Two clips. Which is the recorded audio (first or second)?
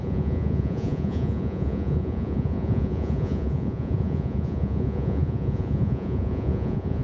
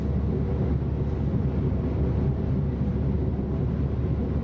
second